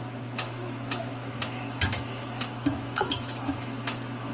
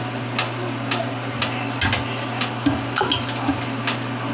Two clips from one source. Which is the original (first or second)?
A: second